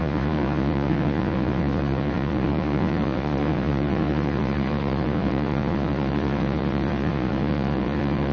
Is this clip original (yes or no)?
no